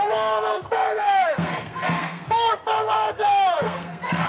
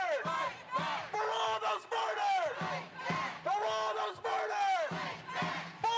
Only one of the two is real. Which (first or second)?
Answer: second